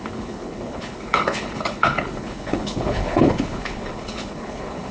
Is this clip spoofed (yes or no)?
yes